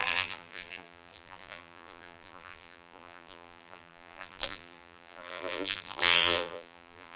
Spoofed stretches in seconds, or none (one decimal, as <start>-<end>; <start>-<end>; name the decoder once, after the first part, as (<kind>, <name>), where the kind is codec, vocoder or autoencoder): 0.0-7.2 (vocoder, BigVGAN v2)